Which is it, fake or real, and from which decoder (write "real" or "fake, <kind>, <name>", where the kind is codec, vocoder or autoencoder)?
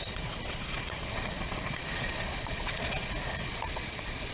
fake, vocoder, Vocos